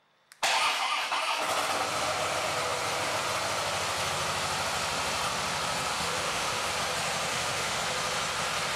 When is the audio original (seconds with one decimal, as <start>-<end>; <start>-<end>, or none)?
0.0-5.9; 6.7-7.3; 7.8-8.8